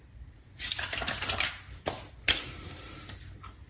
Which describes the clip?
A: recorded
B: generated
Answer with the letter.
A